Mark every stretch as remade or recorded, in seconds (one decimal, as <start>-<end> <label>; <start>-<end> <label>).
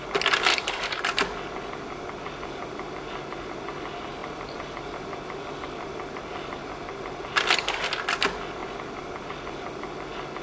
0.0-0.5 recorded; 0.5-1.0 remade; 1.0-10.4 recorded